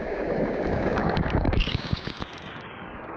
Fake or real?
fake